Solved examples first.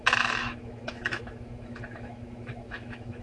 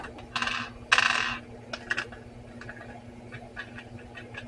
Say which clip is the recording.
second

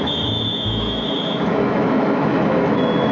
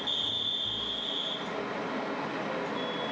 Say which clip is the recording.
second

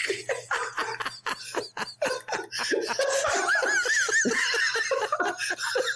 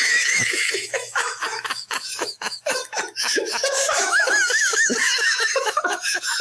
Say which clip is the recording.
first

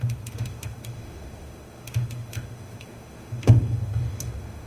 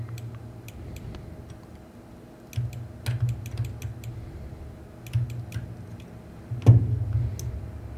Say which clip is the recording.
second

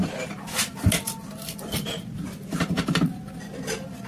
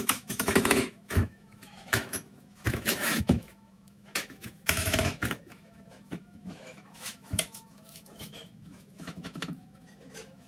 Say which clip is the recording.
first